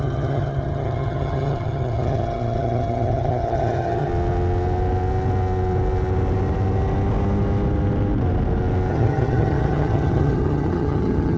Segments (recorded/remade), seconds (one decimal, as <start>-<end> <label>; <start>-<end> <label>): 0.0-4.1 remade; 4.1-8.9 recorded; 8.9-11.4 remade